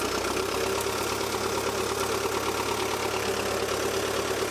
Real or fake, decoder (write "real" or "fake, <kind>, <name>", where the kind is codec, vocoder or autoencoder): real